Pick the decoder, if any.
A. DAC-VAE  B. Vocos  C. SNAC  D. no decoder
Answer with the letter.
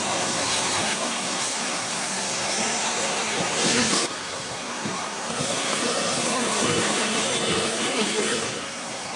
C